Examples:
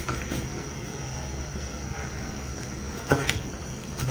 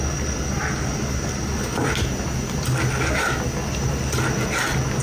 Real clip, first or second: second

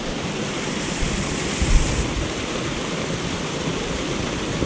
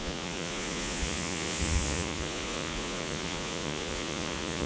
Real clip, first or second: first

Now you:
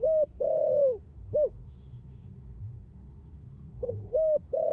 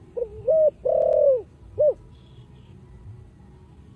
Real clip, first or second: second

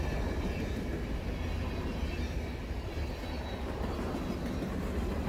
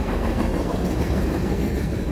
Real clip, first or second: first